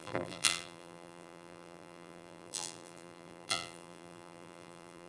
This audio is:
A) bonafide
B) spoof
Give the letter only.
B